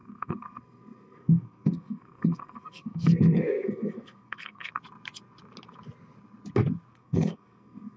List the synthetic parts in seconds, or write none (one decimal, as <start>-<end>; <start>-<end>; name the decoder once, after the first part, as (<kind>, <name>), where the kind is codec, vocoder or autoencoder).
0.0-4.7 (codec, SNAC); 6.9-8.0